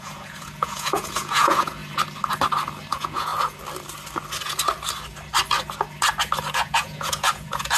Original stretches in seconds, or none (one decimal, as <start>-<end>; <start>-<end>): 1.8-2.9; 3.3-6.5

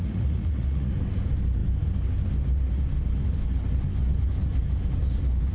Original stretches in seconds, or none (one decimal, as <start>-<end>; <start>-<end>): 0.9-5.5

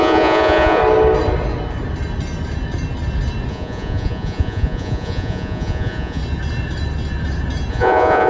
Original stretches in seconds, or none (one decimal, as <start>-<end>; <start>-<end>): 0.8-3.5; 6.2-7.7